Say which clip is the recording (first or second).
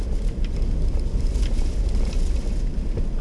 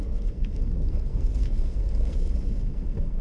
first